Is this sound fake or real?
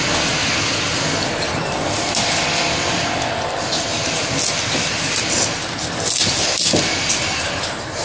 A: real